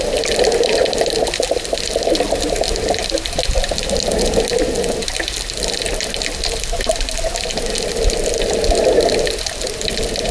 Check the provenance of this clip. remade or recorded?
recorded